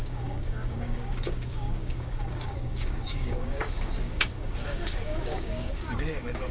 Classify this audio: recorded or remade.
remade